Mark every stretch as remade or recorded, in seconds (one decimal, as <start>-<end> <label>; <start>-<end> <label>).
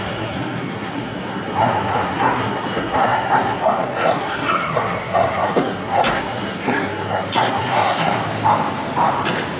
0.0-8.2 remade; 8.2-9.6 recorded